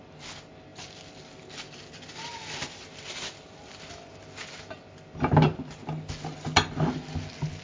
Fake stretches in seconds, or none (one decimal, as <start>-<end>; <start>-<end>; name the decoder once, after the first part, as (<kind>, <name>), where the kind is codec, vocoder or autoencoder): none